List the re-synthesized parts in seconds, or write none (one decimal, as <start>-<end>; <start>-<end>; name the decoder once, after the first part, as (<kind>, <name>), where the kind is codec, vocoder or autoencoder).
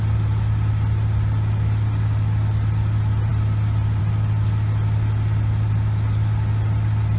none